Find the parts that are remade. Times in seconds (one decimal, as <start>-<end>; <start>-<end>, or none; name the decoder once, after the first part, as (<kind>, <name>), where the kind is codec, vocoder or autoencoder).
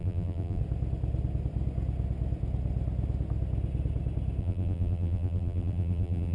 0.0-0.6 (vocoder, BigVGAN v2); 4.4-6.3